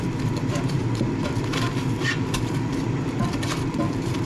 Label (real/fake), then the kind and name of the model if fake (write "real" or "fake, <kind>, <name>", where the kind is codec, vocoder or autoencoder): fake, vocoder, BigVGAN v2